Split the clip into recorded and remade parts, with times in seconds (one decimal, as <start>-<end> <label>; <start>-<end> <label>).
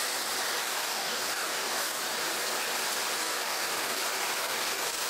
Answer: 0.0-0.6 recorded; 0.6-2.0 remade; 2.0-3.2 recorded; 3.2-4.0 remade; 4.0-4.4 recorded; 4.4-5.1 remade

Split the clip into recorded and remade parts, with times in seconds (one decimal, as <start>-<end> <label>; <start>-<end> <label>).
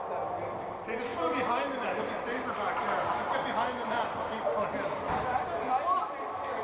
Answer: 0.0-6.6 recorded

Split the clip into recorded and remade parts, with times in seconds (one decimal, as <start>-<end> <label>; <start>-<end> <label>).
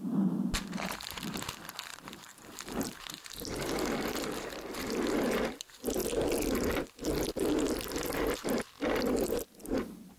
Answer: 0.0-1.9 recorded; 1.9-3.0 remade; 3.0-10.2 recorded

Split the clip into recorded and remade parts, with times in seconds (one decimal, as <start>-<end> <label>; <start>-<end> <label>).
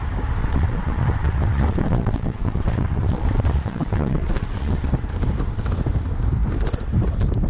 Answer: 0.0-0.4 recorded; 0.4-4.9 remade; 4.9-7.5 recorded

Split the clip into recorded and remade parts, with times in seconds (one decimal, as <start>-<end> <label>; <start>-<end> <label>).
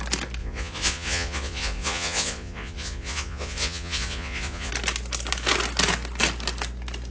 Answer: 0.0-0.4 recorded; 0.4-4.7 remade; 4.7-7.1 recorded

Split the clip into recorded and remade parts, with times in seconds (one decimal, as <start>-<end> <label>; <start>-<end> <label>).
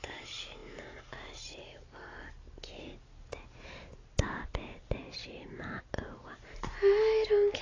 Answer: 0.0-7.6 recorded